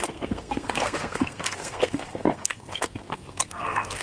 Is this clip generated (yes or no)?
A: yes